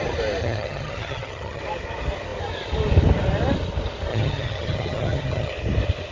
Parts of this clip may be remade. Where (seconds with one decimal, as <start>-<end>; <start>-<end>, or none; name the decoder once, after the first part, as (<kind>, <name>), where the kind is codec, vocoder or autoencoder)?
0.4-1.6 (vocoder, HiFi-GAN); 4.1-5.5